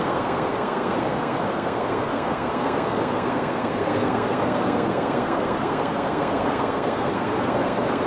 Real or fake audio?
fake